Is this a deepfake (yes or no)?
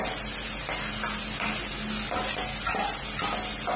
no